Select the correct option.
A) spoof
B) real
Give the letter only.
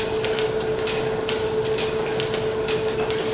B